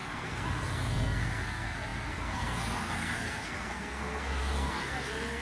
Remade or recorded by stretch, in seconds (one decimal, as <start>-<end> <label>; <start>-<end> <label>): 0.0-5.4 remade